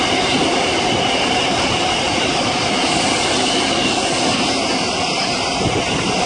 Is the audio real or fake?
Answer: real